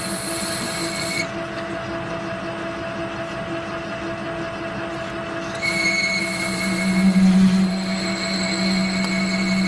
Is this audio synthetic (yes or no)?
no